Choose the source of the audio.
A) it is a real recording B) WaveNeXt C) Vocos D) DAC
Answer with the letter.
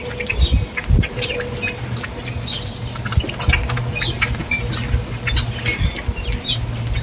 A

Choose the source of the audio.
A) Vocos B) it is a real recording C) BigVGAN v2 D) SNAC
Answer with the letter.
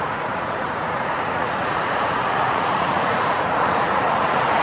A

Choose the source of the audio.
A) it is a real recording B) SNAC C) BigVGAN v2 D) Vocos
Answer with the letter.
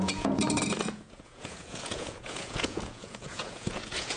D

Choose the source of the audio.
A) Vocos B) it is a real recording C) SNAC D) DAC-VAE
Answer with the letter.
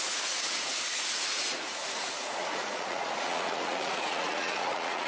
A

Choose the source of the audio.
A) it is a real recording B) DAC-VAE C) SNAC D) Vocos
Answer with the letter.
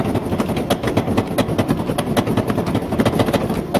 A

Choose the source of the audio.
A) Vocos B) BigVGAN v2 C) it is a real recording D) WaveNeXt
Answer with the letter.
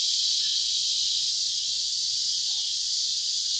A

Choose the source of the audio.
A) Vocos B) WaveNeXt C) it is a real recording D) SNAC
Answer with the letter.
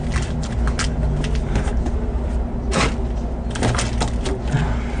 C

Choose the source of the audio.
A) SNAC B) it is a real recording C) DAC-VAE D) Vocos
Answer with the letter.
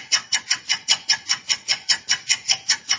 D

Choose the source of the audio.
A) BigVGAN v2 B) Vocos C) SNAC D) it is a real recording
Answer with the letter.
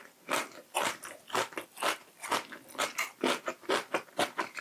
D